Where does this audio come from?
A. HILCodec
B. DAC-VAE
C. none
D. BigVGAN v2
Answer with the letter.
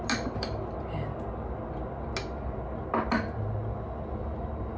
C